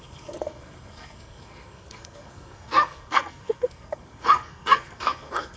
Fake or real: fake